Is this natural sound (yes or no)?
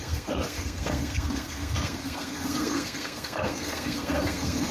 no